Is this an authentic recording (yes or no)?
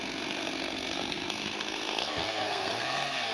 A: no